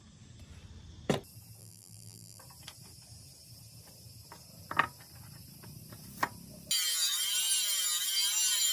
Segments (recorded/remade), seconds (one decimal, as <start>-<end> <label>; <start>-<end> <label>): 0.0-1.6 recorded; 1.6-2.4 remade; 2.4-8.7 recorded